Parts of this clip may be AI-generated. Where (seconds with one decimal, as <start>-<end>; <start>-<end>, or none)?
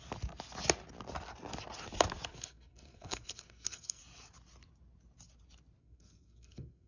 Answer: 2.3-4.0; 5.8-6.9